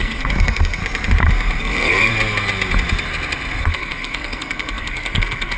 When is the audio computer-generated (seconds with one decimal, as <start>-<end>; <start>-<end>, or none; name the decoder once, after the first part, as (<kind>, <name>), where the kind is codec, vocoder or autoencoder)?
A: 0.0-0.8 (codec, SNAC); 1.6-2.1; 3.6-5.6